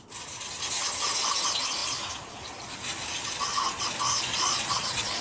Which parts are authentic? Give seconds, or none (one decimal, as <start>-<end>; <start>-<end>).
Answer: 0.0-4.3